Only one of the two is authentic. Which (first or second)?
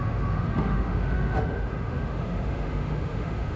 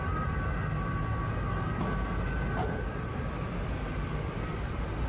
second